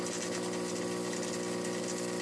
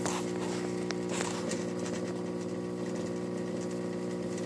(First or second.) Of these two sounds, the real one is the first